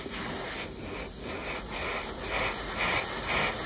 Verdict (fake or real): real